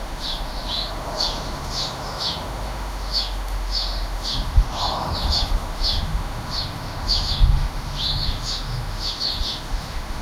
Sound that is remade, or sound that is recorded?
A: remade